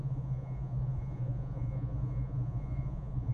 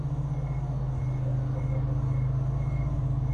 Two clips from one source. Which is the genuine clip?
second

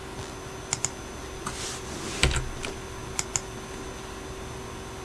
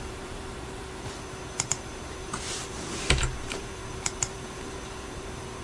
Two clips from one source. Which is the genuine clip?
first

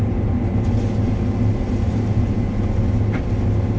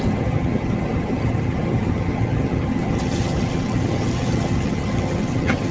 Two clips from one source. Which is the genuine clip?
first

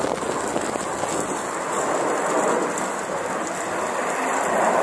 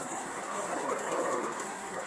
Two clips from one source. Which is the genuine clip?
first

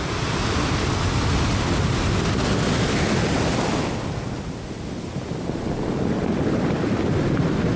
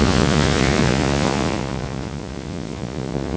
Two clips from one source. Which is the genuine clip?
first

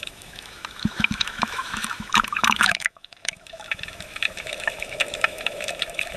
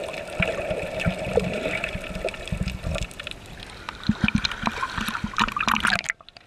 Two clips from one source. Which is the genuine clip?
second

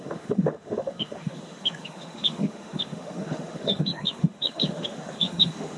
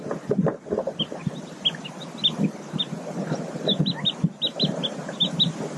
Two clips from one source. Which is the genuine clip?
second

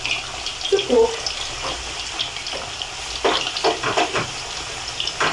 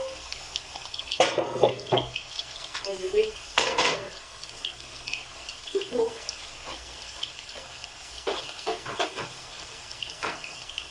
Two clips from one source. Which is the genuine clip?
first